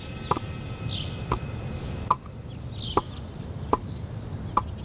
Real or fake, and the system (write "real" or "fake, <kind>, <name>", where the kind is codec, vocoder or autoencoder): real